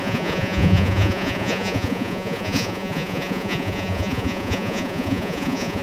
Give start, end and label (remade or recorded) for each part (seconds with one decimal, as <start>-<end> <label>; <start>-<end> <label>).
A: 0.0-5.8 remade